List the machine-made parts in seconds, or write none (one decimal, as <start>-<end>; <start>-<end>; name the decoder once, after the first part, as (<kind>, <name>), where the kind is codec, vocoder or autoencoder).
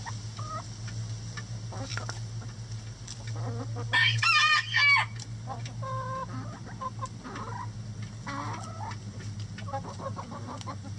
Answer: none